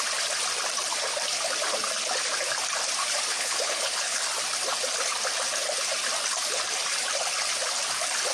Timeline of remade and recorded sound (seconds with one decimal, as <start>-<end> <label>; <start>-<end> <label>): 0.0-3.3 recorded; 3.3-4.2 remade; 4.2-8.3 recorded